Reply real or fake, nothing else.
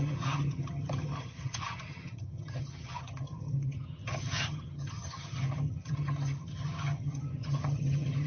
fake